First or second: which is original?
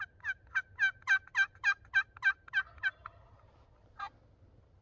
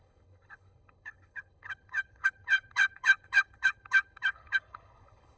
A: first